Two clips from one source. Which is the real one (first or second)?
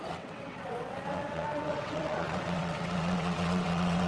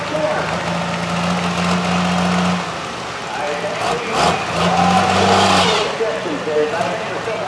second